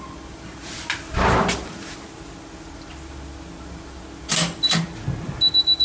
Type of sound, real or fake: real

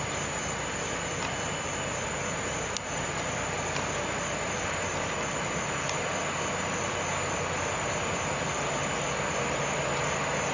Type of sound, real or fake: real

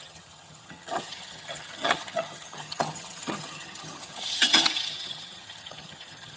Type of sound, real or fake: fake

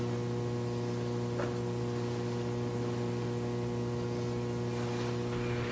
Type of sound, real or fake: real